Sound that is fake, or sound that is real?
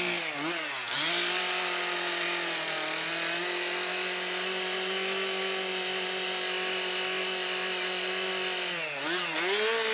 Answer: real